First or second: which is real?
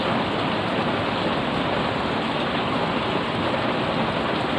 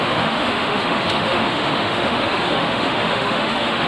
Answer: first